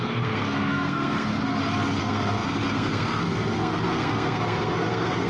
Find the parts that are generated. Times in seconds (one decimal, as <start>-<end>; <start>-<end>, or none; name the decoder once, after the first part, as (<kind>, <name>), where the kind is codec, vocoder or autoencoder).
0.0-1.3 (codec, SNAC); 2.0-5.3